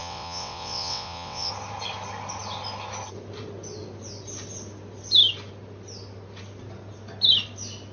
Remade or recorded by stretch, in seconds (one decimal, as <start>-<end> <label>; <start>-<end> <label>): 0.0-1.5 remade; 1.5-7.9 recorded